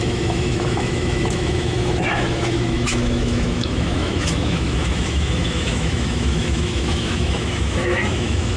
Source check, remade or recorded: remade